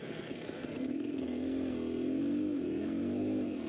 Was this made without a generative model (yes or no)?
no